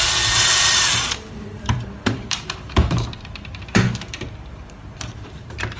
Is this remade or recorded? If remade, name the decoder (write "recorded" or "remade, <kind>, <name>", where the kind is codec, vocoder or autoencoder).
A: remade, vocoder, BigVGAN v2